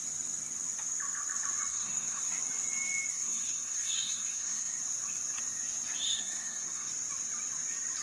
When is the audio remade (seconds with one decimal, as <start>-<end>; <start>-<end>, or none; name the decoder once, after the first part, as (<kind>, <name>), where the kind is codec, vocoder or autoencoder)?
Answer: 1.7-2.3 (codec, SNAC); 3.1-4.8; 6.0-6.9